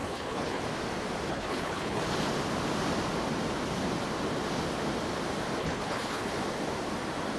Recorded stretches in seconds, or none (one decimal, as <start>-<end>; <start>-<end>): 0.6-1.3; 2.0-5.6; 6.3-7.4

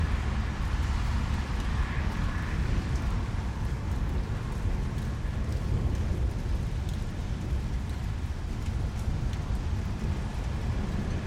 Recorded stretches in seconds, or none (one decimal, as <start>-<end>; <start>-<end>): 0.0-1.7; 4.1-5.5; 6.1-11.3

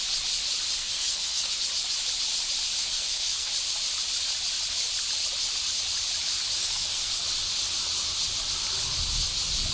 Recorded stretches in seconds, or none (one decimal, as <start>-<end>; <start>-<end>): 0.0-0.8; 1.6-2.8; 3.5-6.6; 7.1-9.7

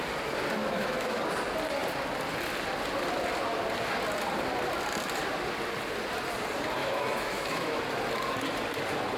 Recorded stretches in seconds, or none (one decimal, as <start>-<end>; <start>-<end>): 0.0-0.6; 1.2-6.8; 7.8-9.2

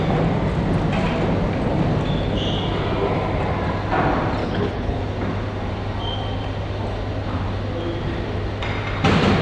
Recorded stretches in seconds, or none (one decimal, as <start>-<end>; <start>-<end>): 0.0-4.4; 5.0-9.4

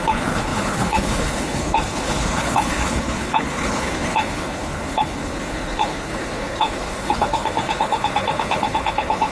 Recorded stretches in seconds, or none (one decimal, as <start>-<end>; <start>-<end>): none

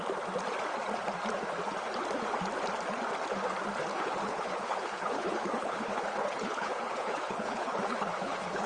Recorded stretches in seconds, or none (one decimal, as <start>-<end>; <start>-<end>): 0.0-3.9

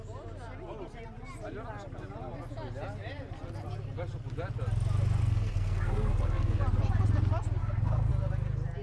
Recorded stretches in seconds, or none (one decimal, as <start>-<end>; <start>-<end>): 0.0-5.2; 6.6-7.6; 8.1-8.8